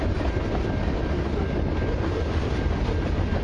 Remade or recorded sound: recorded